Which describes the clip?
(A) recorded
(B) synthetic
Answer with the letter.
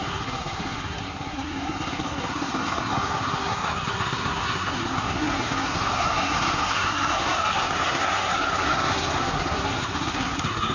B